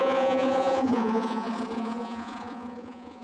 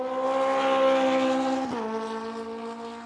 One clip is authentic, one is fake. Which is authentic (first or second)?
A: second